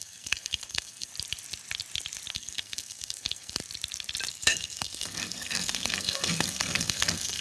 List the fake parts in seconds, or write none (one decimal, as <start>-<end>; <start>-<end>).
0.0-1.1; 2.3-3.6; 4.3-7.4

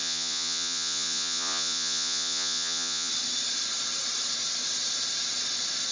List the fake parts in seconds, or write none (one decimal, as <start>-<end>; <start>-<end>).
0.0-3.1